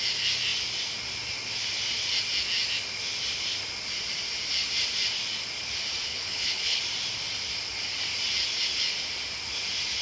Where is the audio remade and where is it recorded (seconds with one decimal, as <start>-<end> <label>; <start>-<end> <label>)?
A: 0.0-6.1 recorded; 6.1-6.8 remade; 6.8-10.0 recorded